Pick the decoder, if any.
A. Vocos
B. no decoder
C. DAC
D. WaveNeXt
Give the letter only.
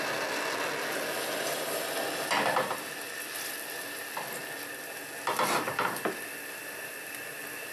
B